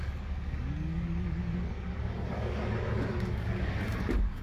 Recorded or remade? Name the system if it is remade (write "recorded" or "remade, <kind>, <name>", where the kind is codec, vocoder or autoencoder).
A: remade, codec, DAC